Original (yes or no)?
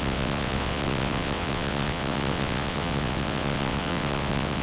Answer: no